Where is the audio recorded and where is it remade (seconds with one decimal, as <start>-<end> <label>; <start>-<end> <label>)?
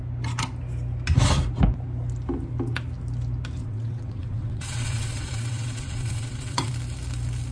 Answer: 0.0-3.6 recorded; 3.6-6.7 remade; 6.7-7.5 recorded